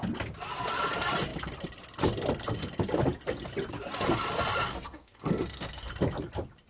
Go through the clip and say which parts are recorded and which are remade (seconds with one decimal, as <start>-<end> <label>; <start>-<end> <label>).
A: 0.0-4.7 recorded; 4.7-5.9 remade; 5.9-6.7 recorded